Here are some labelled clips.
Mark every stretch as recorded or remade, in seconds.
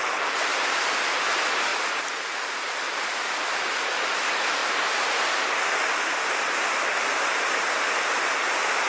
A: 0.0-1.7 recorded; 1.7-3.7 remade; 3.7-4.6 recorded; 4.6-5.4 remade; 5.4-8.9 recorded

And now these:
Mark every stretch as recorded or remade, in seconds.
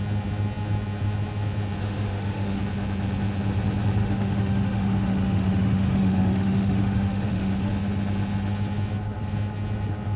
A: 0.0-1.8 recorded; 1.8-2.6 remade; 2.6-4.0 recorded; 4.0-7.7 remade; 7.7-10.2 recorded